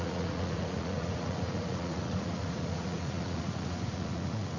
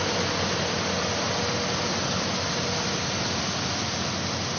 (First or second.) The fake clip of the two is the first